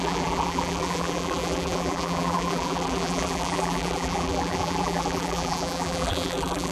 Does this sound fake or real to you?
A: fake